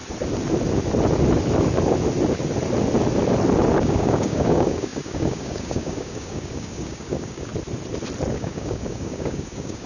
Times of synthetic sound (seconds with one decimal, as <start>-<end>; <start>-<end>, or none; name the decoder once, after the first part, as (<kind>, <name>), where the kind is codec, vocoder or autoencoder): 3.8-7.5 (codec, DAC); 8.3-9.9